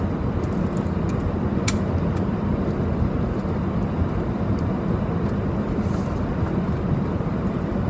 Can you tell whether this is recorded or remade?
recorded